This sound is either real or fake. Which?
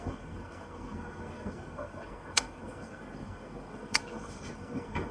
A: fake